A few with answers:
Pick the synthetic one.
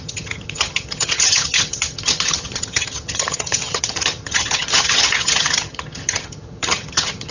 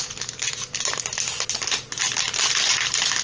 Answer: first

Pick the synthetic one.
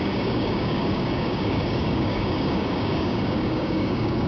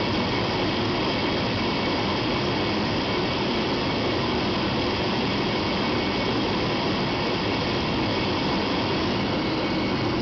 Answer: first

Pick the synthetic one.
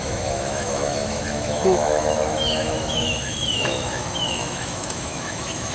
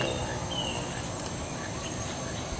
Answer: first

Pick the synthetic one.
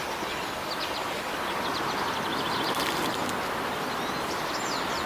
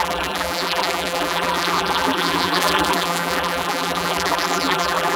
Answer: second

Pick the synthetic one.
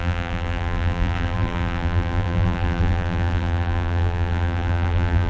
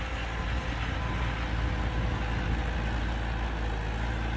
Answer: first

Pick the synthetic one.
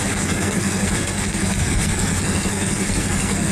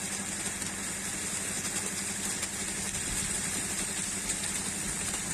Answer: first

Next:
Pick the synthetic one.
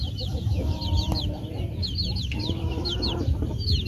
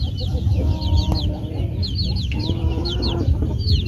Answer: first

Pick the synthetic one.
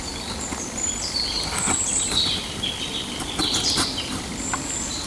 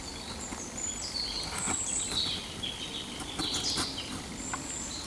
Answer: first